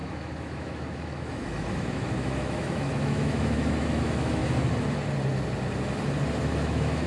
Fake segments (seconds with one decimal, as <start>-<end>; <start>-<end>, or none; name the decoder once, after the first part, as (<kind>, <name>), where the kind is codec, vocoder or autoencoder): 0.0-4.4 (autoencoder, DAC-VAE); 6.4-7.1